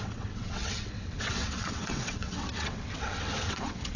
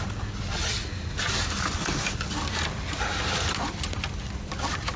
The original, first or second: second